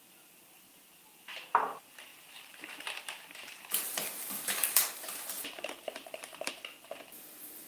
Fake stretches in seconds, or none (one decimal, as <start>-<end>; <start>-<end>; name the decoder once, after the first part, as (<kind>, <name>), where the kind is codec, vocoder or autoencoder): 2.1-6.5 (vocoder, BigVGAN v2)